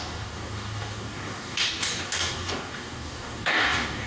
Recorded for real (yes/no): no